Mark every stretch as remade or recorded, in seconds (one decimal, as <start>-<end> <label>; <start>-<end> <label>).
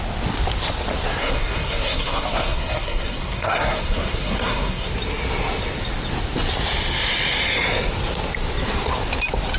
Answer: 0.0-1.2 recorded; 1.2-4.9 remade; 4.9-9.6 recorded